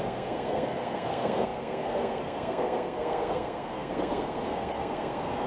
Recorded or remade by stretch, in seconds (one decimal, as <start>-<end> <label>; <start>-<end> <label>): 0.0-5.5 remade